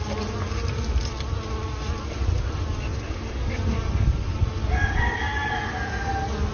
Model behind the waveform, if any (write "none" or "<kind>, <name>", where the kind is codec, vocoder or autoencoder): none